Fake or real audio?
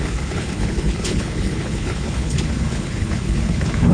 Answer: fake